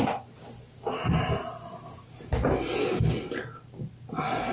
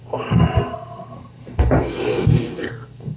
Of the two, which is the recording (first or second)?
first